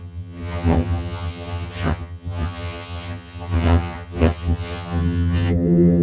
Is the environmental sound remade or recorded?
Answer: remade